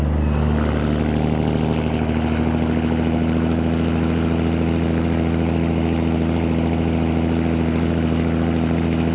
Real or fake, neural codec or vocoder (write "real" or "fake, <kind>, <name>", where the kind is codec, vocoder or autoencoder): real